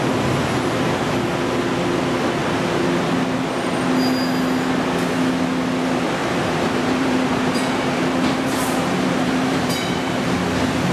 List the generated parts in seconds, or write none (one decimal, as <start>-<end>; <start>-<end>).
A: 2.4-3.1; 6.2-10.4